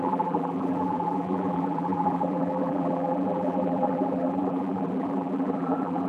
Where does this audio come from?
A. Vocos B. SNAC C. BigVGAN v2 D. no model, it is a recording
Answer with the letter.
C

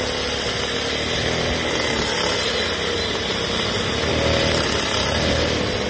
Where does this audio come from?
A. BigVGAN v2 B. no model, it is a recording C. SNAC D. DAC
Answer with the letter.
B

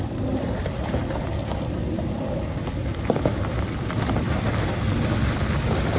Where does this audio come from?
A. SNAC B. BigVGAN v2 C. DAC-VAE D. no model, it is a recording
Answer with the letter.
B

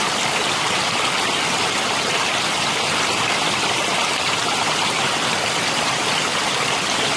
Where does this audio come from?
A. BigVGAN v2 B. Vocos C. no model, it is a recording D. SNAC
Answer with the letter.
A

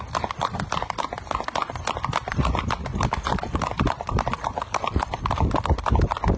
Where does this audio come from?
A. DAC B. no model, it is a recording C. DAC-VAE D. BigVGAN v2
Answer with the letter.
B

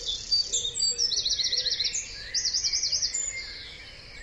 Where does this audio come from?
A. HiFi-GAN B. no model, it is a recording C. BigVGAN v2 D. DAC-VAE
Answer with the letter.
B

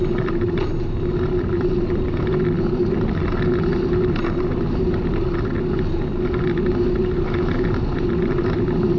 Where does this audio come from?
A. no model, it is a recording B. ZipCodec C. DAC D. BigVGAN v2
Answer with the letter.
A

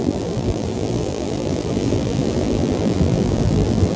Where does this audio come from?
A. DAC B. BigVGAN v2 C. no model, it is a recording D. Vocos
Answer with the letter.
B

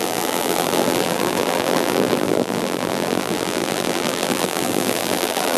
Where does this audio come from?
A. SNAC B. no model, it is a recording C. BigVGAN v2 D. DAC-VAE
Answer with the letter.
C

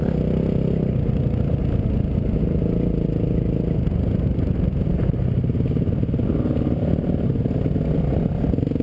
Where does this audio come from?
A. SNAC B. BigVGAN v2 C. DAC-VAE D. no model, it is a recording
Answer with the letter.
D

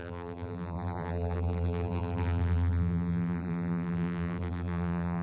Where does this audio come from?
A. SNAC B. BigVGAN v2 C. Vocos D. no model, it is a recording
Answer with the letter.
B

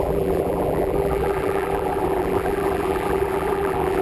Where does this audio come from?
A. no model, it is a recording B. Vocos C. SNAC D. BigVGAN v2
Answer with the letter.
D